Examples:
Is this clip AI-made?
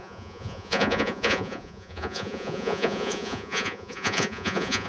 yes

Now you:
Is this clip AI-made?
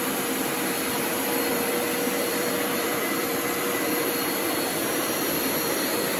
yes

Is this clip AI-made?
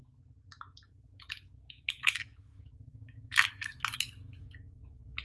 yes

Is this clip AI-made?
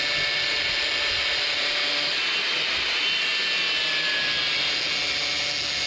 no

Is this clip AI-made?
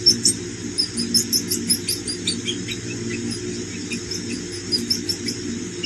no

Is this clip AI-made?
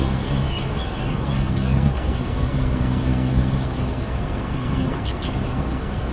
yes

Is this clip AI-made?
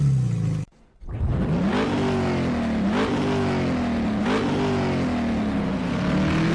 no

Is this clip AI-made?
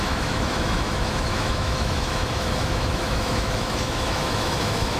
yes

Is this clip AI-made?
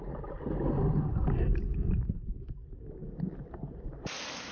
no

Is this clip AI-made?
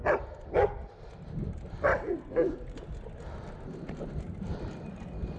no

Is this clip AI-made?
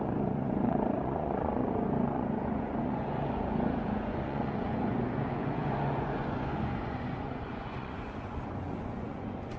yes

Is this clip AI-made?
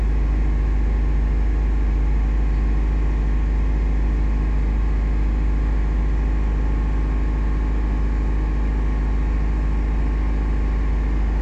no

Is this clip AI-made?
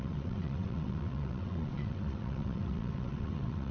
yes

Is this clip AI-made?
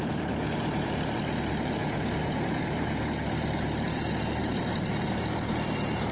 yes